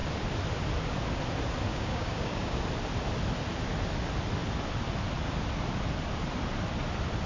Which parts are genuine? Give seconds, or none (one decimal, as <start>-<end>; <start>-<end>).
0.0-1.7; 2.6-7.3